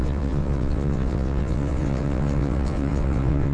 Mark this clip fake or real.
fake